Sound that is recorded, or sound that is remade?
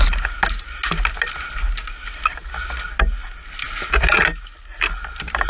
recorded